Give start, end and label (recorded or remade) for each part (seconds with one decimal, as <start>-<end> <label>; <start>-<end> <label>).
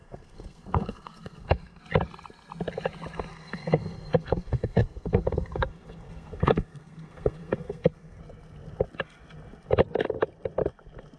0.0-1.8 remade; 1.8-3.3 recorded; 3.3-8.2 remade; 8.2-11.2 recorded